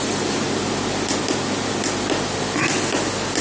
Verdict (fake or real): real